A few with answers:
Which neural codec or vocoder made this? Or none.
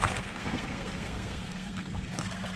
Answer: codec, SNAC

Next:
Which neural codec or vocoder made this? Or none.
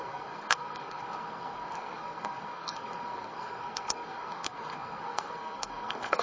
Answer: codec, SNAC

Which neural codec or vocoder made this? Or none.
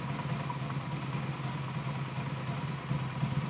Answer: none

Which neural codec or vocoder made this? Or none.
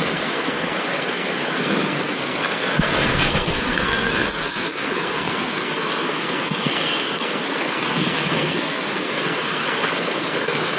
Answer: codec, SNAC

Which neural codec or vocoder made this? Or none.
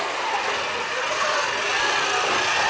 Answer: none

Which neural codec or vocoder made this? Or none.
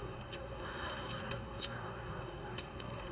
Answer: codec, SNAC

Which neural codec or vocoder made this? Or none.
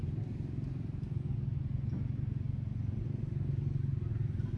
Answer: none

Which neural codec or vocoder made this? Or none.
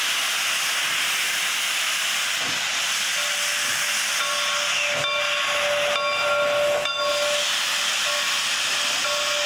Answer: none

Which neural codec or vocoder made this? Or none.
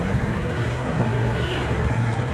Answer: codec, SNAC